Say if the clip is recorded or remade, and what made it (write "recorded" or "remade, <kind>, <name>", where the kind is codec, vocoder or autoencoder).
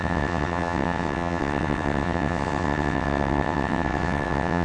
remade, vocoder, WaveNeXt